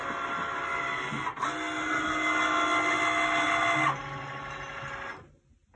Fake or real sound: real